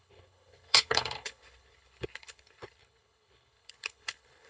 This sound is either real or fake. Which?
fake